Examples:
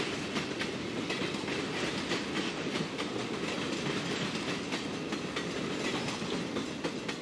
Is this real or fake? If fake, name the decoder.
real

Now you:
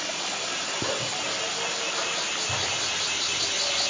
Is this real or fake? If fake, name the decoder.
real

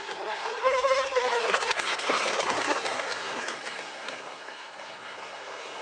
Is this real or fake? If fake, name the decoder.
fake, codec, SNAC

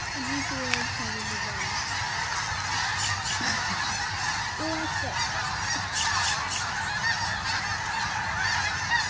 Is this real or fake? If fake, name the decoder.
real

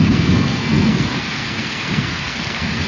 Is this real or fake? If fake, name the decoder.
fake, codec, SNAC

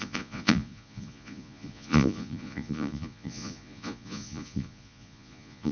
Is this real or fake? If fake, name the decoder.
fake, vocoder, Vocos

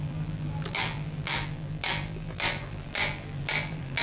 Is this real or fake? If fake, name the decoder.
fake, vocoder, BigVGAN v2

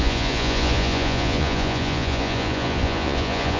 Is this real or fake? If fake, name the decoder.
fake, vocoder, Vocos